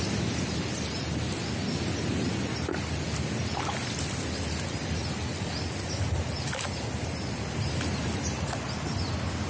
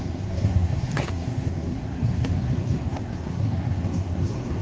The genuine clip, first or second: first